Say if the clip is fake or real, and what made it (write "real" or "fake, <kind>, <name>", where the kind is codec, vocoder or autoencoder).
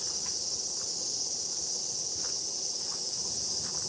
real